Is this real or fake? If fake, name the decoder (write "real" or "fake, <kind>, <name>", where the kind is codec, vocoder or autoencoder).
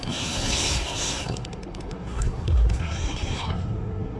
fake, codec, SNAC